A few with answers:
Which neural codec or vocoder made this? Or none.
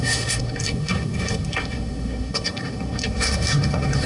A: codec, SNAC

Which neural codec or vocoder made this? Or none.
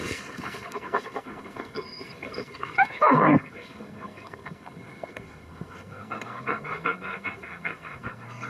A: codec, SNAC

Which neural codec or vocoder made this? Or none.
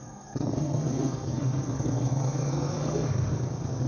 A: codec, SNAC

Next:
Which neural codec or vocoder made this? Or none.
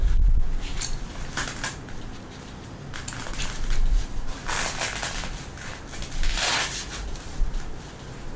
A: none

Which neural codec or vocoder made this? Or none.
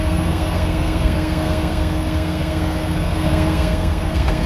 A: codec, SNAC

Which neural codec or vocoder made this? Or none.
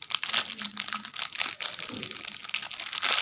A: none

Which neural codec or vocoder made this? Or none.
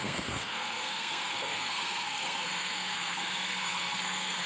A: codec, SNAC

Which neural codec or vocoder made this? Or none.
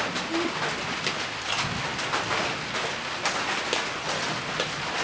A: none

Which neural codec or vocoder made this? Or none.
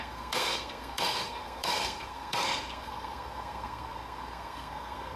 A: codec, SNAC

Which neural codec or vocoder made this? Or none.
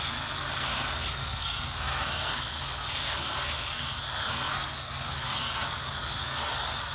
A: codec, SNAC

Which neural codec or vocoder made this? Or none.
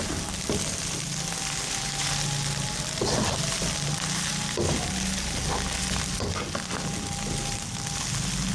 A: none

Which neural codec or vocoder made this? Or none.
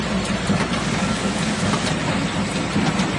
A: none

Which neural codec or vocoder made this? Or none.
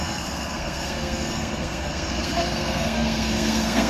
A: codec, SNAC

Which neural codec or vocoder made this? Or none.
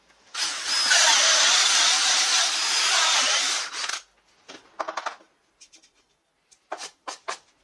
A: none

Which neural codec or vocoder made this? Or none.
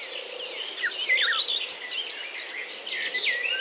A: none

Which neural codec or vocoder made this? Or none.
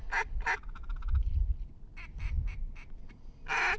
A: none